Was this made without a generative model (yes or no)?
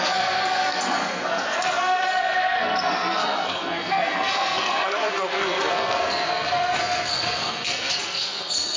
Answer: no